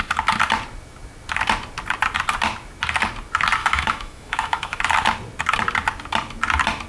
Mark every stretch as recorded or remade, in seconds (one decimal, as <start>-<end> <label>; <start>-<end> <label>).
0.0-3.6 recorded; 3.6-4.8 remade; 4.8-6.9 recorded